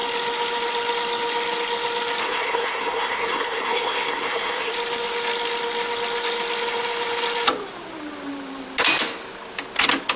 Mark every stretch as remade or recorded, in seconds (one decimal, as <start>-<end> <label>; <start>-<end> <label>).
0.0-2.2 recorded; 2.2-4.7 remade; 4.7-10.2 recorded